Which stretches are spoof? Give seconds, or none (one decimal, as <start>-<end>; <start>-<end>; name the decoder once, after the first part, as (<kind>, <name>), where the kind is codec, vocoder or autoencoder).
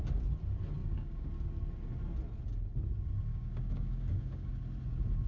0.8-1.3 (codec, DAC); 3.3-4.5